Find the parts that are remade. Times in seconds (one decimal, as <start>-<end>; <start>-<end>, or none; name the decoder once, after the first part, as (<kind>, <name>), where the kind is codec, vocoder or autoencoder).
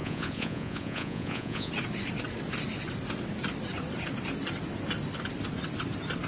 0.0-1.7 (vocoder, Vocos)